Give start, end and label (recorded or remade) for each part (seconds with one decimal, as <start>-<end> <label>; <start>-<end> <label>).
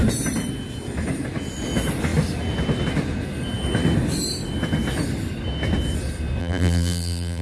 0.0-6.4 recorded; 6.4-7.4 remade